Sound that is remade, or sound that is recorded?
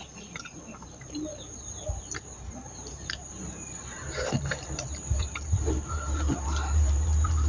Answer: remade